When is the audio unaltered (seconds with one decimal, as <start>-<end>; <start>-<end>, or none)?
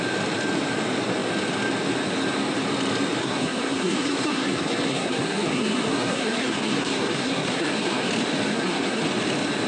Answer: 0.0-3.2; 8.1-8.5; 9.0-9.7